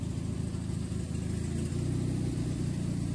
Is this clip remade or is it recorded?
recorded